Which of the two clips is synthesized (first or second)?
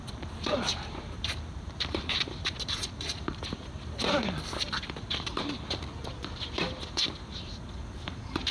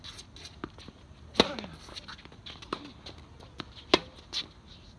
first